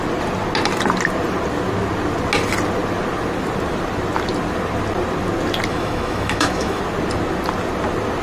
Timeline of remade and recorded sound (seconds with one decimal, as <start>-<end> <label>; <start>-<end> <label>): 0.0-5.7 recorded; 5.7-6.8 remade; 6.8-8.2 recorded